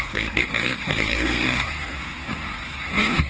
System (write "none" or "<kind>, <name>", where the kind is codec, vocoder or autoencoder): codec, SNAC